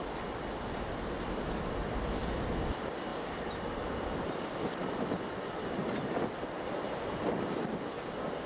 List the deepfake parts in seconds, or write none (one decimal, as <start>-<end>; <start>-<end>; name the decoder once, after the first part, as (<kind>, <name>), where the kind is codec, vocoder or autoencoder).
1.2-2.2 (vocoder, BigVGAN v2); 2.7-3.1; 3.7-5.8; 7.1-8.5